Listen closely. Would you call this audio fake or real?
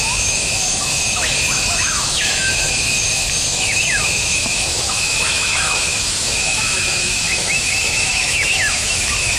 fake